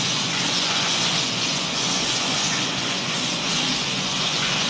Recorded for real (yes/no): no